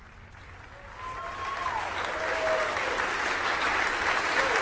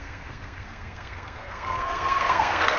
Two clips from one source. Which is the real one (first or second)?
first